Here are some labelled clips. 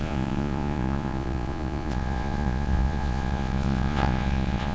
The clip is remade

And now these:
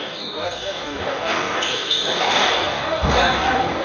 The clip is remade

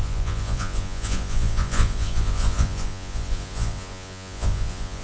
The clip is remade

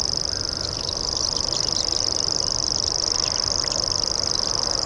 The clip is recorded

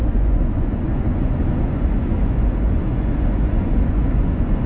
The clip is remade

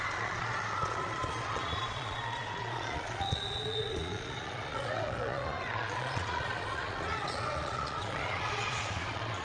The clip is remade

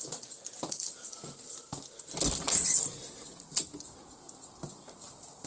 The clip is recorded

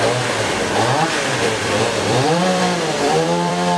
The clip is remade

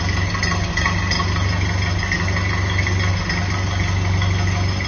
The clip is recorded